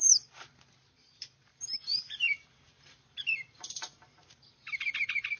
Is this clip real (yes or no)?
no